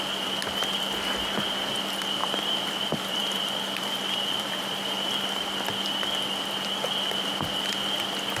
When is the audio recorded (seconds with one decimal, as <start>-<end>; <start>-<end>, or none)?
0.0-2.2; 4.7-8.4